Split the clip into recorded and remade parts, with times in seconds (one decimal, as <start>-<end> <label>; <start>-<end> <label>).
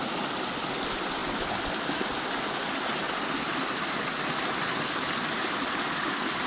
0.0-6.5 recorded